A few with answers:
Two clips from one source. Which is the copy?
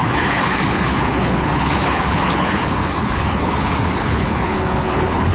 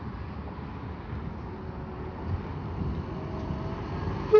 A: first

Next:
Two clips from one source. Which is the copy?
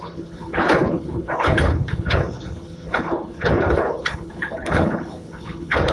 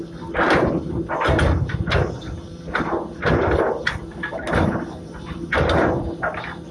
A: first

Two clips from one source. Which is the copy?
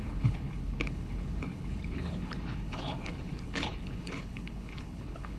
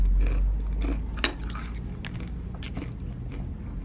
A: first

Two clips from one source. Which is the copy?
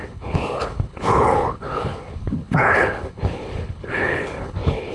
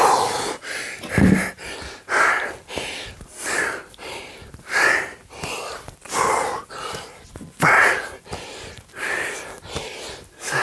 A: first